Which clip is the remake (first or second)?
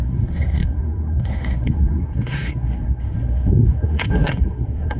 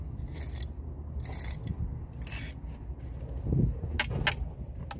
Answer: first